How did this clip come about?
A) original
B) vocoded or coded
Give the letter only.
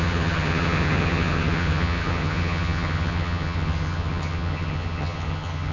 B